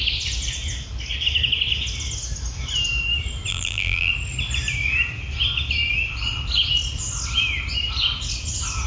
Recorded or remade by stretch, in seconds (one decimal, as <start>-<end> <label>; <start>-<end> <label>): 0.0-3.5 recorded; 3.5-4.1 remade; 4.1-8.9 recorded